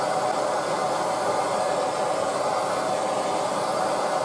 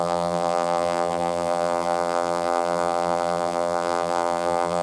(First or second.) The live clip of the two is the first